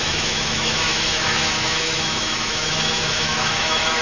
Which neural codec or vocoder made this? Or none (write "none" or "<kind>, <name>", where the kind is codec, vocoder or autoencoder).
autoencoder, DAC-VAE